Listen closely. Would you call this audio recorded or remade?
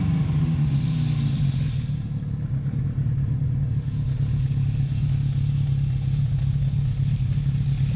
recorded